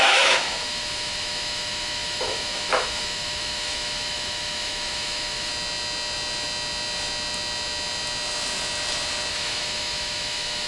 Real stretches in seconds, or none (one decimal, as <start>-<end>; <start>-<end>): 5.5-9.3